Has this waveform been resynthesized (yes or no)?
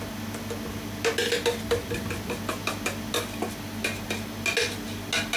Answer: no